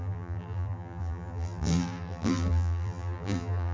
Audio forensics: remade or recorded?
remade